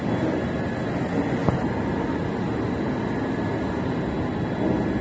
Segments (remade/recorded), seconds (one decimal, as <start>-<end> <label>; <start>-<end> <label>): 0.0-5.0 recorded